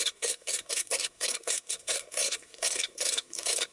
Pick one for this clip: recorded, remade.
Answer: remade